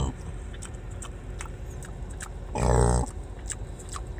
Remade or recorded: recorded